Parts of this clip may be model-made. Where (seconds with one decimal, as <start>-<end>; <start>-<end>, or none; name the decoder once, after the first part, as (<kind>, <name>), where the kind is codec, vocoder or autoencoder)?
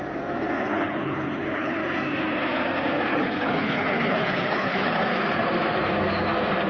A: 0.7-1.8 (codec, HILCodec); 3.1-5.0